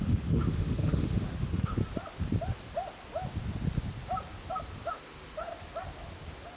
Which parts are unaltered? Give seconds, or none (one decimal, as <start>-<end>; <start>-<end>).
1.8-4.9; 5.5-6.6